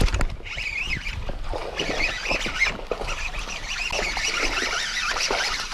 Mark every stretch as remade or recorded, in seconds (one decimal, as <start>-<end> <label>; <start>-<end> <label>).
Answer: 0.0-5.7 recorded